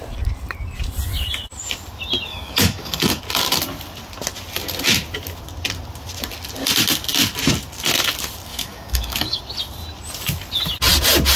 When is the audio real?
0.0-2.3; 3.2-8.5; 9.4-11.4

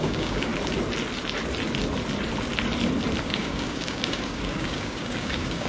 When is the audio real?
0.5-3.2

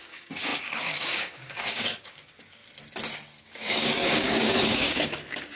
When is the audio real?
2.6-3.4